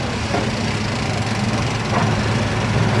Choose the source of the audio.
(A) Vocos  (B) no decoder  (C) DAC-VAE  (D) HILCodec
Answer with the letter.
B